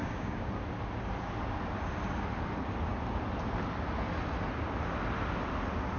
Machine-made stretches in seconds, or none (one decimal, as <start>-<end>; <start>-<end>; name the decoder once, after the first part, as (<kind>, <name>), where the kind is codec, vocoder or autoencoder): 0.0-0.5 (codec, DAC)